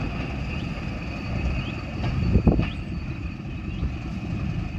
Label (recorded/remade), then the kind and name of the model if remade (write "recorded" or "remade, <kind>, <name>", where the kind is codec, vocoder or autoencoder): recorded